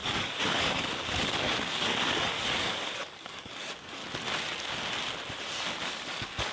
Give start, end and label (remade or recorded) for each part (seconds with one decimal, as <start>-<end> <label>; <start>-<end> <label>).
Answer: 0.0-4.0 remade; 4.0-6.1 recorded; 6.1-6.5 remade